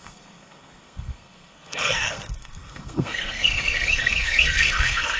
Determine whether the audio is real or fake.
fake